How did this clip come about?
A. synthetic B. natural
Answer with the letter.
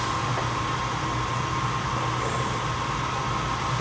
B